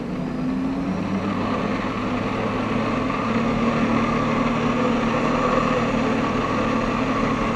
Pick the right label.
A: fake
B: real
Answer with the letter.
B